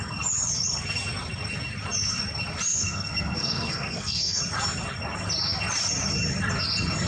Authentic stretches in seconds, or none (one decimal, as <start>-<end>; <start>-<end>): 0.0-2.7; 4.4-7.1

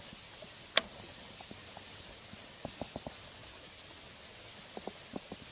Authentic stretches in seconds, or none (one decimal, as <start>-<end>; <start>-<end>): 0.0-5.5

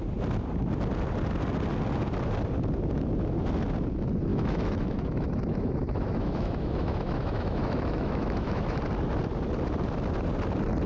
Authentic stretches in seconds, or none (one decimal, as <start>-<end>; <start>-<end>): 0.0-4.3; 8.8-10.9